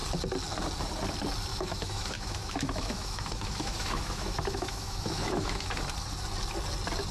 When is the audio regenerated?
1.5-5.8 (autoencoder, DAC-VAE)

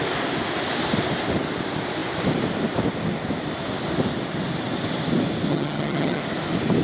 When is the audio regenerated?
5.5-6.2 (vocoder, HiFi-GAN)

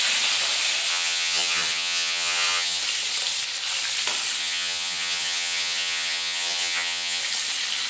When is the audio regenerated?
0.9-2.8 (vocoder, HiFi-GAN); 4.4-7.2

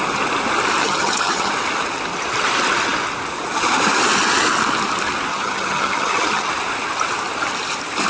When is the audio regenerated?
0.8-1.5 (vocoder, HiFi-GAN); 5.3-6.5

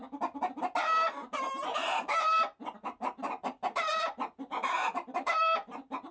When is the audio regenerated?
1.6-5.3 (vocoder, BigVGAN v2)

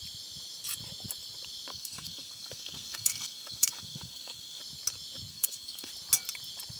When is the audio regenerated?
1.7-4.6 (codec, SNAC); 5.3-5.9